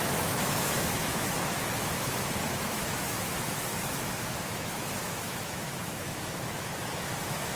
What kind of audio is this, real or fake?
fake